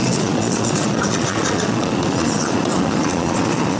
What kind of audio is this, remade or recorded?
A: remade